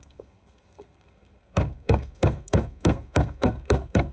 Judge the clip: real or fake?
fake